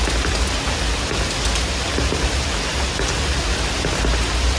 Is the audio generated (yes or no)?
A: no